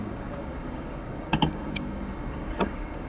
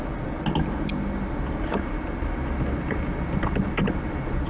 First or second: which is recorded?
second